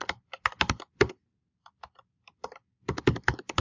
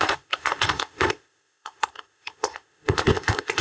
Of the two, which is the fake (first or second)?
second